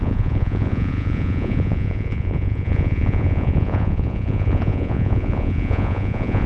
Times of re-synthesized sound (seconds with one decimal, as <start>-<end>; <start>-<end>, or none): 0.0-6.5